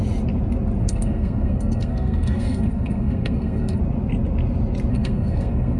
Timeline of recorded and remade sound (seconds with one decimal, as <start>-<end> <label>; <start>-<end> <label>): 0.0-0.8 recorded; 0.8-3.8 remade; 3.8-4.9 recorded; 4.9-5.8 remade